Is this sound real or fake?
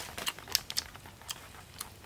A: real